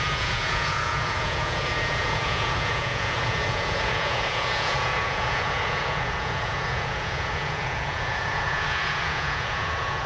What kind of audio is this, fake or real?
fake